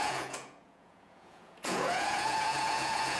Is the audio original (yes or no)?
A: no